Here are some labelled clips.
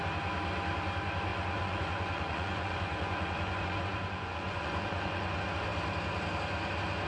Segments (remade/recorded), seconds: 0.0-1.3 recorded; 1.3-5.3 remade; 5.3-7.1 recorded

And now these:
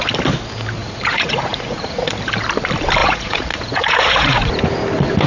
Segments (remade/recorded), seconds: 0.0-0.8 recorded; 0.8-2.1 remade; 2.1-3.0 recorded; 3.0-4.5 remade; 4.5-5.3 recorded